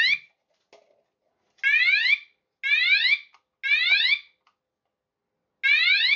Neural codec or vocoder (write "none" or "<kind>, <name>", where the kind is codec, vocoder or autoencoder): none